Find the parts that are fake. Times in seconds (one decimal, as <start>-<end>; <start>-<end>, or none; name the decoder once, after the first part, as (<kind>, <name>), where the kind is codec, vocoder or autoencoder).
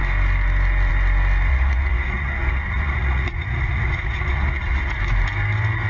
1.5-5.0 (vocoder, Vocos)